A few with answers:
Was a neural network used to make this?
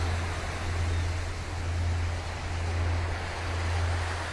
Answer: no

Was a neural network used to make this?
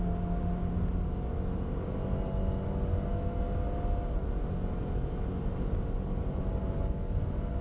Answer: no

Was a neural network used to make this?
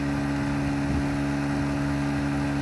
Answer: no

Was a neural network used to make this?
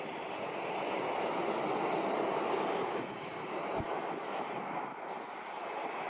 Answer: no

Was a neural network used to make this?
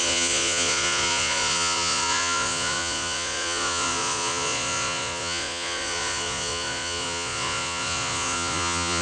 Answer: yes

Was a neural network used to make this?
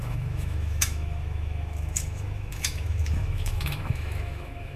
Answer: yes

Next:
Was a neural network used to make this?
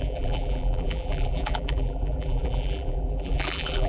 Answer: yes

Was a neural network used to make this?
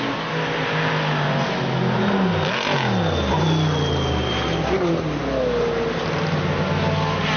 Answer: no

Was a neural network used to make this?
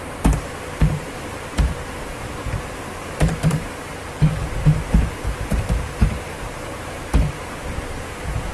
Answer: yes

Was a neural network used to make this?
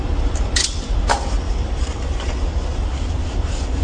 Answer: yes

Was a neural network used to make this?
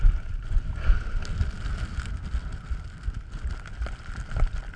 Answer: no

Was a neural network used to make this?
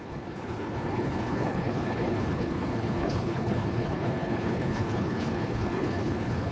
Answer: yes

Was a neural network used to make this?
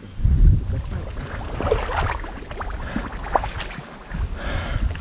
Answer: no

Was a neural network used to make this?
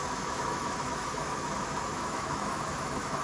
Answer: yes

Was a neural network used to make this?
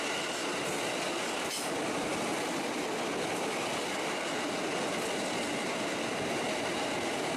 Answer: no